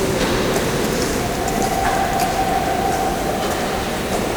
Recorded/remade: recorded